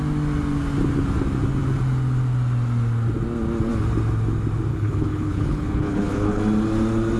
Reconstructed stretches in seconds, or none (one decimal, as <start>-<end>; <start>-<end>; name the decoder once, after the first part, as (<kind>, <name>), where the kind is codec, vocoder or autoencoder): 4.7-6.4 (codec, HILCodec)